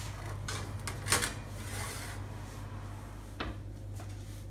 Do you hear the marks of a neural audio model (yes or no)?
no